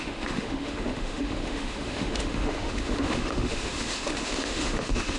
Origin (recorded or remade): remade